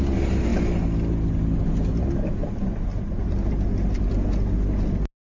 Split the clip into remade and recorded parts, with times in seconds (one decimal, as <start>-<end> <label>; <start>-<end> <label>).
0.0-2.9 recorded; 2.9-3.7 remade; 3.7-5.4 recorded